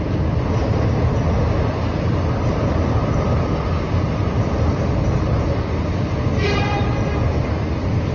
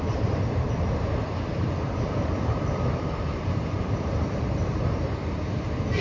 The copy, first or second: second